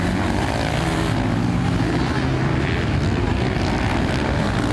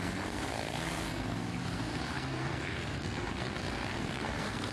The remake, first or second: second